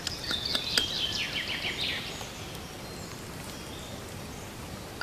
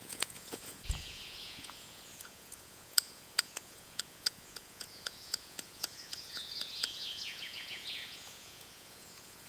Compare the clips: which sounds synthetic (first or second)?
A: second